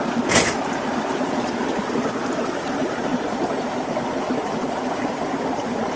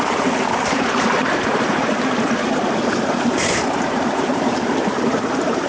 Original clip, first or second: first